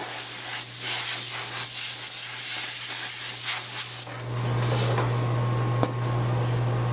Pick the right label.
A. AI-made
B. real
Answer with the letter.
B